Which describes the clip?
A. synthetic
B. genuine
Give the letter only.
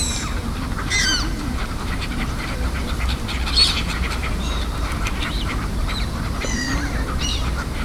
A